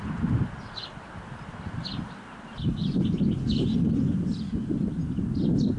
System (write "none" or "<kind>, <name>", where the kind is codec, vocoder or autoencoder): none